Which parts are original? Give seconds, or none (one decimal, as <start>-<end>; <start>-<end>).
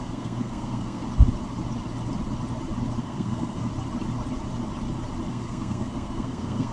1.0-3.0; 3.7-5.3